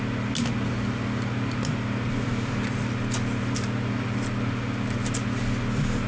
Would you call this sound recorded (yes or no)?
yes